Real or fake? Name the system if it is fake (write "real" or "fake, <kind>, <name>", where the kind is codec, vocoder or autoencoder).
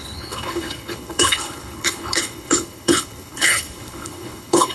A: fake, codec, HILCodec